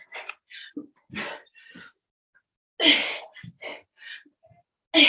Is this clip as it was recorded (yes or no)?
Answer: yes